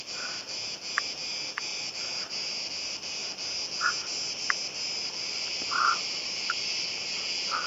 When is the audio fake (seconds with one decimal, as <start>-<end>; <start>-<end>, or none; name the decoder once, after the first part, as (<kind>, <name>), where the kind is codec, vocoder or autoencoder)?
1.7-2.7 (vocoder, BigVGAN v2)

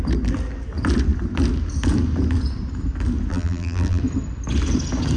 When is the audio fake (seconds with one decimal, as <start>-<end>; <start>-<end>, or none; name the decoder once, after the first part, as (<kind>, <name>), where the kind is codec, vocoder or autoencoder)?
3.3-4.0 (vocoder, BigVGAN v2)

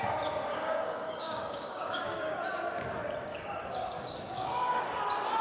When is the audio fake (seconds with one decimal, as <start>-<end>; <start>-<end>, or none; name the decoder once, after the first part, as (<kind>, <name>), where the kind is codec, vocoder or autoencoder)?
0.5-2.4 (codec, DAC); 3.3-4.9

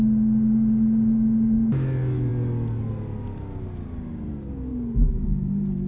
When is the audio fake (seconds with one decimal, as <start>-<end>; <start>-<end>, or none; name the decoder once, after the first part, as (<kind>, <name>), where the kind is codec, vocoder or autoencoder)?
none

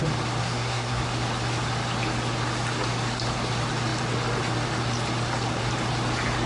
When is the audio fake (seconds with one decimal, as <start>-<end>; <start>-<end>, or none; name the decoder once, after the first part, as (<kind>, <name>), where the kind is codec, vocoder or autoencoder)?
0.4-1.0 (codec, SNAC)